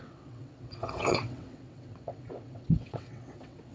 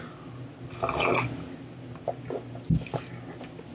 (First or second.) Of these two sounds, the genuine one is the second